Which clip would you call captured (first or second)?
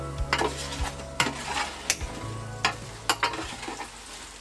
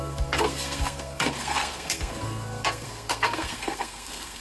first